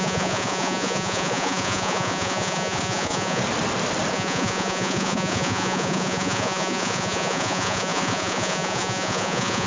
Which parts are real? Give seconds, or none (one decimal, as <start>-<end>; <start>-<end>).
3.4-4.1